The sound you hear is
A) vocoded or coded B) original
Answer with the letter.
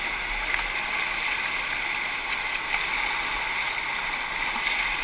B